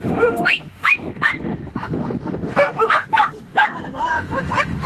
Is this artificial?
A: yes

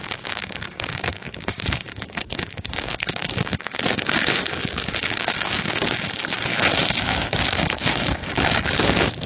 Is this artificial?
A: yes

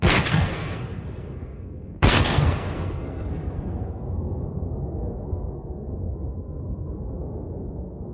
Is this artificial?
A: yes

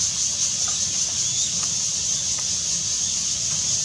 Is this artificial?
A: no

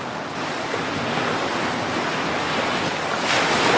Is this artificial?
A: no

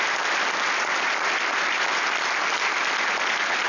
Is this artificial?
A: no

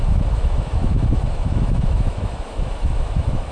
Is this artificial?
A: yes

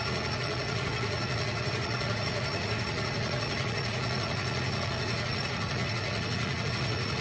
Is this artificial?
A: yes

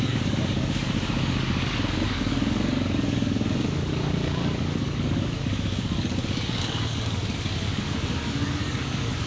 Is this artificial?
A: yes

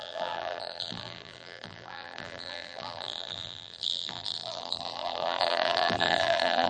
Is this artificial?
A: yes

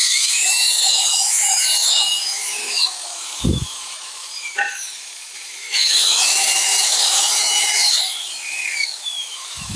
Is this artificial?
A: yes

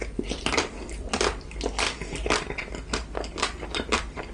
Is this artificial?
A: no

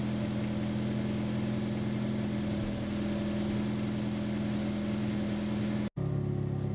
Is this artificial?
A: no